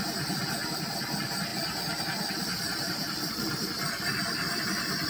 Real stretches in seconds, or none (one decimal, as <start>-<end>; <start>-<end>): 0.0-1.5; 4.6-5.1